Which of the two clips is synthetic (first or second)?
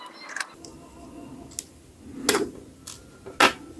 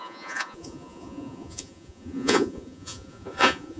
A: second